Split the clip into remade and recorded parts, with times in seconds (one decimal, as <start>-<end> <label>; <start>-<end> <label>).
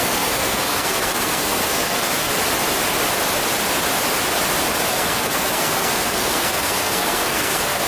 0.0-2.3 remade; 2.3-4.9 recorded; 4.9-7.9 remade